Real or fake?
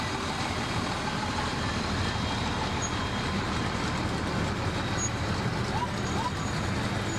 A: real